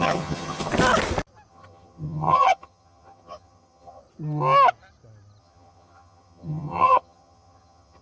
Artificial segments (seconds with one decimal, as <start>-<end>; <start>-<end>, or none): 0.0-0.7; 1.5-4.0; 5.4-8.0